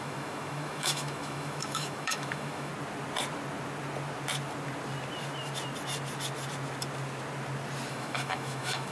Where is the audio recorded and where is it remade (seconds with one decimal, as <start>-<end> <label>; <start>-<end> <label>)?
0.0-2.7 remade; 2.7-7.9 recorded; 7.9-8.9 remade